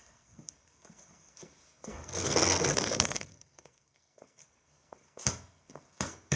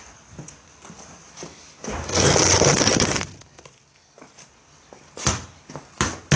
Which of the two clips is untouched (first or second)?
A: second